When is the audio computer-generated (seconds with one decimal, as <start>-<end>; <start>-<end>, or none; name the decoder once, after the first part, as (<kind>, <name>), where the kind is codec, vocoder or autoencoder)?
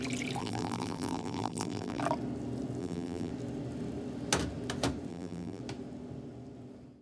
0.4-2.0 (vocoder, BigVGAN v2); 2.8-3.3; 5.1-5.6